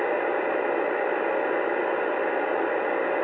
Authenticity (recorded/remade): recorded